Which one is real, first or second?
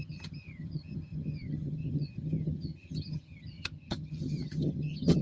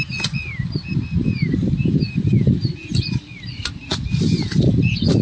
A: second